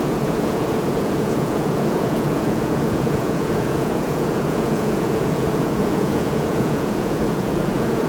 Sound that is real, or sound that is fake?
fake